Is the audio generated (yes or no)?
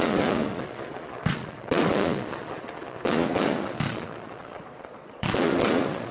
yes